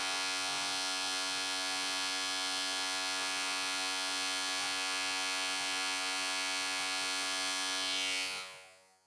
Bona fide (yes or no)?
no